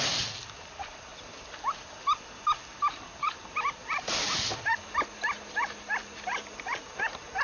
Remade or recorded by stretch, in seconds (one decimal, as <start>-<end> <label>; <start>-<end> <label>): 0.0-3.8 recorded; 3.8-4.5 remade; 4.5-6.0 recorded; 6.0-6.9 remade; 6.9-7.4 recorded